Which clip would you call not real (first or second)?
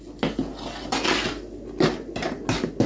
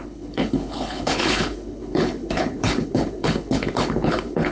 second